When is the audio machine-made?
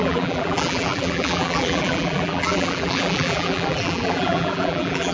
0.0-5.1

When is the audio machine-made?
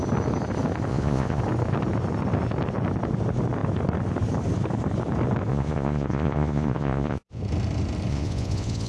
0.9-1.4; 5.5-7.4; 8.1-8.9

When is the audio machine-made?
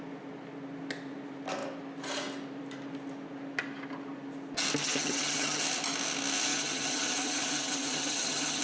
4.8-5.6; 6.5-8.6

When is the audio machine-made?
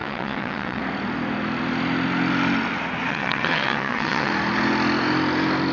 0.0-0.8; 3.1-4.3